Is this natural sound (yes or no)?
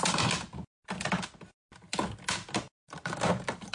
yes